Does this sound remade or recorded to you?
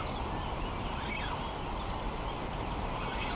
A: recorded